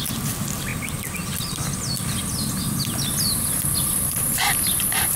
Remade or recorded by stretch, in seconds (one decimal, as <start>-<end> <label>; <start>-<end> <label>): 0.0-5.2 recorded